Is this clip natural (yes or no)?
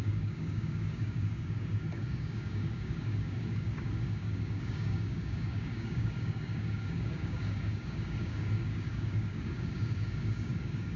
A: no